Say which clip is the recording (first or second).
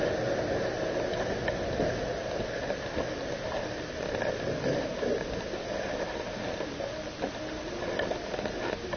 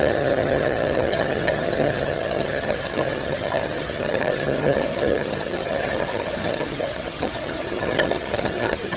first